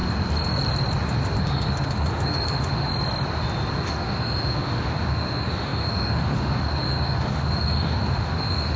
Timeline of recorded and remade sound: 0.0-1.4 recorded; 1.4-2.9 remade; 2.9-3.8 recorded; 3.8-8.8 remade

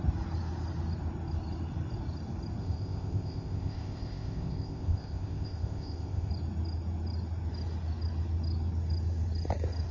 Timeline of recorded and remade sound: 0.0-2.6 recorded; 2.6-6.3 remade; 6.3-9.9 recorded

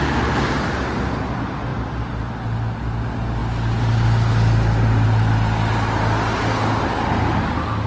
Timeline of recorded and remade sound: 0.0-7.9 recorded

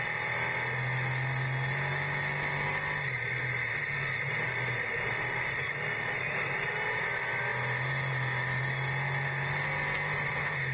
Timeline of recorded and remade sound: 0.0-10.7 recorded

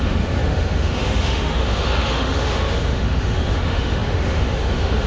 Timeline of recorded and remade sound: 0.0-5.1 remade

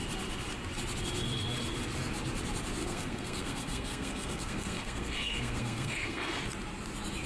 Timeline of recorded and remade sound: 0.0-2.8 recorded; 2.8-6.4 remade; 6.4-7.3 recorded

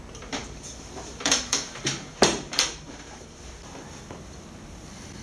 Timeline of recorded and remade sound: 0.0-0.4 recorded; 0.4-3.5 remade; 3.5-5.2 recorded